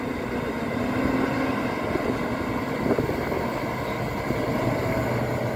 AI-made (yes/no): no